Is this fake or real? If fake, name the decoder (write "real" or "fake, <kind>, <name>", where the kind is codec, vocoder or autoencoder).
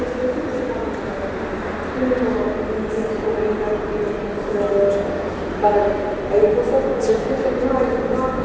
real